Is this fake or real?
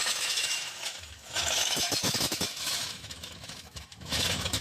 fake